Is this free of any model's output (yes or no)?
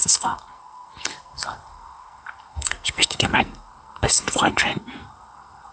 no